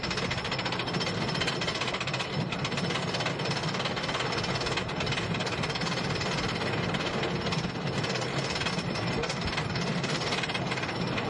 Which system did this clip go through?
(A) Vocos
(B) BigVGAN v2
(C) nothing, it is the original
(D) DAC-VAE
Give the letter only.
C